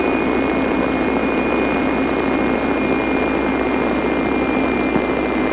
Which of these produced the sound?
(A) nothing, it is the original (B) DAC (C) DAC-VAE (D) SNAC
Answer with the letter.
A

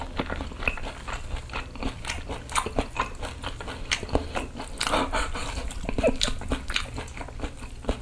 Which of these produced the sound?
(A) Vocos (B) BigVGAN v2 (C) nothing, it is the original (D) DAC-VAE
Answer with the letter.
C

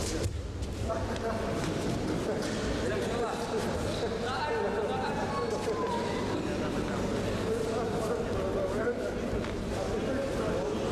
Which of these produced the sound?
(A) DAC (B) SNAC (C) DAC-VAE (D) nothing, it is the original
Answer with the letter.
D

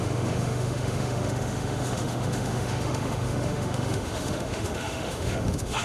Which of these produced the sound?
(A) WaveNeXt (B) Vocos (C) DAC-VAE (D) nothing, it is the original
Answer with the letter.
C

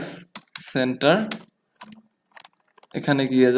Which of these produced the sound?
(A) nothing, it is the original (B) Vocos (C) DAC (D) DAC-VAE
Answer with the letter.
A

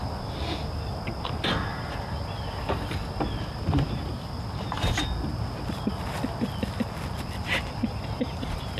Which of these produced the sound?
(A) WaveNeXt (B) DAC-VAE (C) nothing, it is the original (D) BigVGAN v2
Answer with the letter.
C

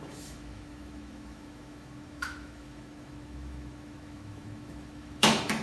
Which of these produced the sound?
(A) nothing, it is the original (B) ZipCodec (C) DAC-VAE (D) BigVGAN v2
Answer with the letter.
C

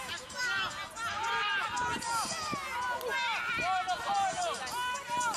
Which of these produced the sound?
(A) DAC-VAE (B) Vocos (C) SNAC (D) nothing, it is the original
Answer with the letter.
D